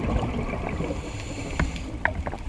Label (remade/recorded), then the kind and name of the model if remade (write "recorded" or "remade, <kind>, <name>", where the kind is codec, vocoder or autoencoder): recorded